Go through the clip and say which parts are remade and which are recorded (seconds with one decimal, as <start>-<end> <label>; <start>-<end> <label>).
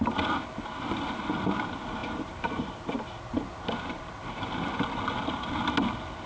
0.0-6.3 recorded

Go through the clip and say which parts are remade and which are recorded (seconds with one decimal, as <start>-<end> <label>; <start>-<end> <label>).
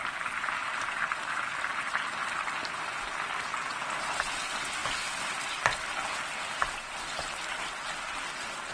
0.0-8.7 recorded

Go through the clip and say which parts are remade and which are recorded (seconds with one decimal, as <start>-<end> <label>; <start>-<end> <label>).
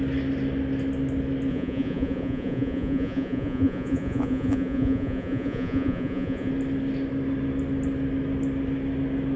0.0-1.5 recorded; 1.5-6.5 remade; 6.5-9.4 recorded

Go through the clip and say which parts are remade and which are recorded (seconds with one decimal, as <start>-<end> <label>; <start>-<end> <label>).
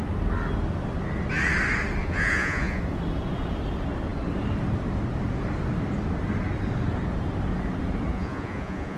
0.0-2.0 recorded; 2.0-2.8 remade; 2.8-8.1 recorded; 8.1-9.0 remade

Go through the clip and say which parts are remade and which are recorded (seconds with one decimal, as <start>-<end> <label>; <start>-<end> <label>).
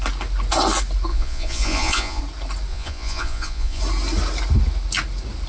0.0-1.1 recorded; 1.1-2.2 remade; 2.2-2.7 recorded; 2.7-3.8 remade; 3.8-5.5 recorded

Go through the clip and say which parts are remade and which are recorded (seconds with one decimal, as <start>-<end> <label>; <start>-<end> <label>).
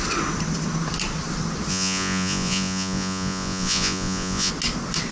0.0-1.7 recorded; 1.7-4.5 remade; 4.5-5.1 recorded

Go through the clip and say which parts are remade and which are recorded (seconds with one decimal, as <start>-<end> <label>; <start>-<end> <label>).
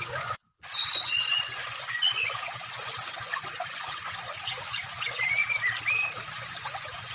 0.0-5.4 remade; 5.4-6.3 recorded; 6.3-7.1 remade